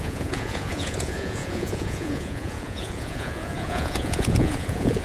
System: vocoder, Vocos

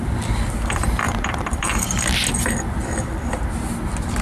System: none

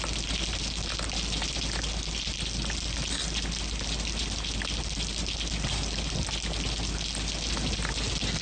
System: none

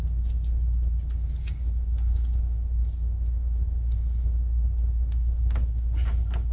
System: none